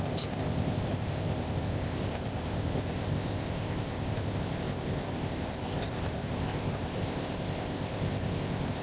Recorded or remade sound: remade